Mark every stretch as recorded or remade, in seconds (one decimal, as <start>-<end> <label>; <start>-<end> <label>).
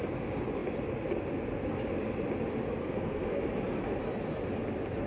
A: 0.0-2.8 recorded; 2.8-3.4 remade; 3.4-5.1 recorded